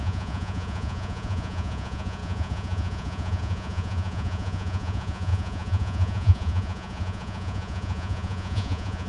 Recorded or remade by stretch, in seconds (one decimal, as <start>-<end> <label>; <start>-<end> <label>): 0.0-9.1 remade